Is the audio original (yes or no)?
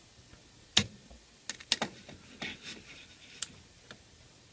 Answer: yes